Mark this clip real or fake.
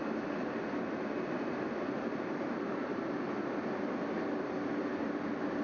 real